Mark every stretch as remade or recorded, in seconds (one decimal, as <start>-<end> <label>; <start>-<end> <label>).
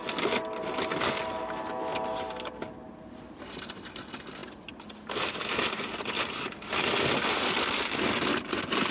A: 0.0-8.9 recorded